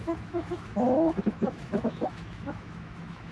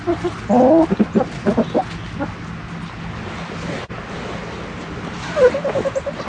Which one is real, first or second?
second